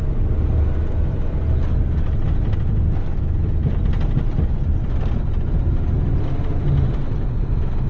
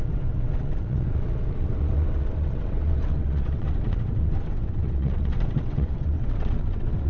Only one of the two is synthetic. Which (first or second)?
second